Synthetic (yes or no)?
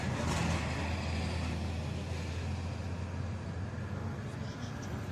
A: no